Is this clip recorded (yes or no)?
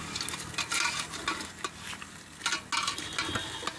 yes